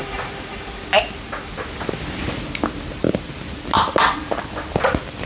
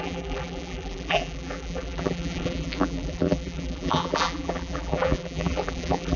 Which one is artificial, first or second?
second